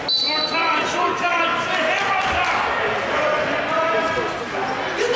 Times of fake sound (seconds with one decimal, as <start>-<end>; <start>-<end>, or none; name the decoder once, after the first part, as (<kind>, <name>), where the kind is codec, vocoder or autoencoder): none